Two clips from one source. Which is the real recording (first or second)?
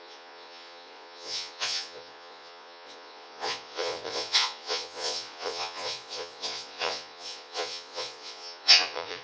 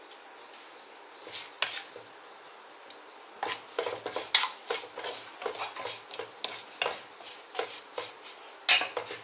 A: second